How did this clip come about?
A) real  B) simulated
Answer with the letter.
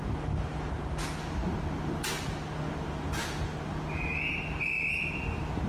A